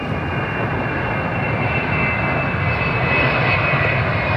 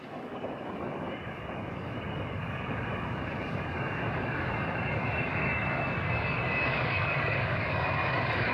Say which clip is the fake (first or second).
second